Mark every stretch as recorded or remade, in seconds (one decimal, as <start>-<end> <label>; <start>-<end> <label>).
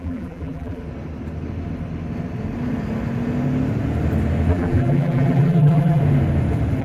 0.0-0.8 remade; 0.8-4.5 recorded; 4.5-6.0 remade; 6.0-6.8 recorded